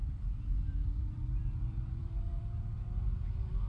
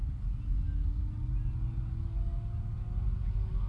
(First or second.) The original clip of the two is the second